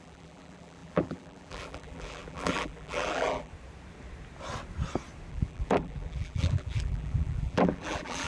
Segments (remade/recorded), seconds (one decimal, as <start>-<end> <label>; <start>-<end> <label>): 0.0-3.5 remade; 3.5-5.3 recorded; 5.3-8.3 remade